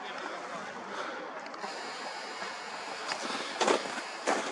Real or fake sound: real